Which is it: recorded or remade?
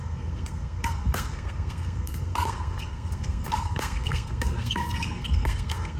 remade